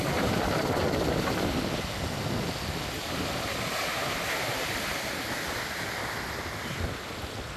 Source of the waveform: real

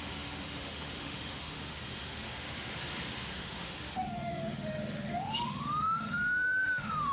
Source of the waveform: fake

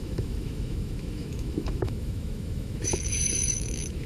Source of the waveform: fake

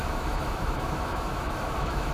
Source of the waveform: fake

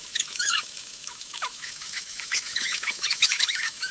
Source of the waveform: fake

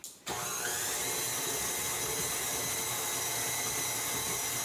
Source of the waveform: real